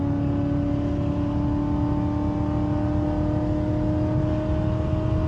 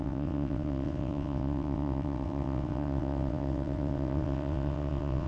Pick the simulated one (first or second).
second